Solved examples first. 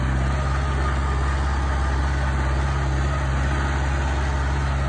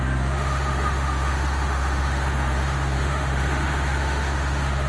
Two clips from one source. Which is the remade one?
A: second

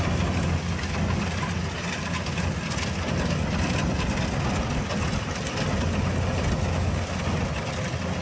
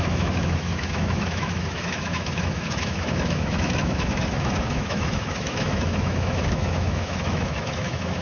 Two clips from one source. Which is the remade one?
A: second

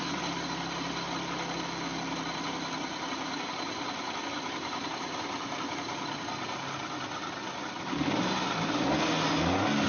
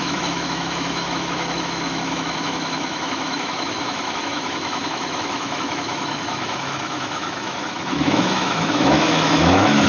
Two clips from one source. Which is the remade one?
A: second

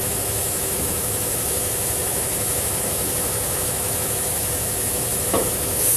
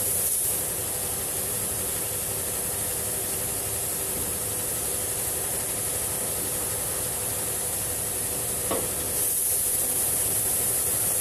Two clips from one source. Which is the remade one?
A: first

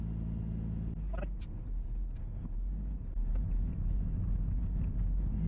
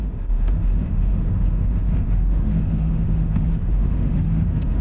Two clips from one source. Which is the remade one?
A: second